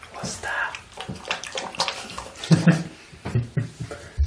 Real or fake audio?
fake